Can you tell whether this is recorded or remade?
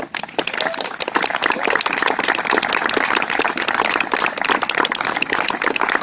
recorded